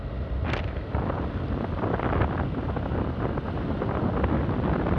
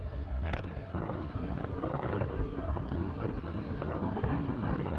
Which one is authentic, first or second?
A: first